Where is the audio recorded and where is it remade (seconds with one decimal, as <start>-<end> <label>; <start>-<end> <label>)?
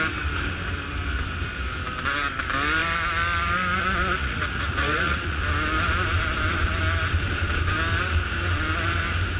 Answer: 0.0-4.2 recorded; 4.2-5.4 remade; 5.4-9.4 recorded